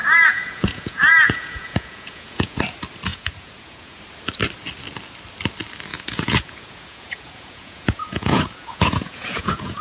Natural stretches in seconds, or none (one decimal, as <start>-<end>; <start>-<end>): 2.6-3.1; 4.0-5.9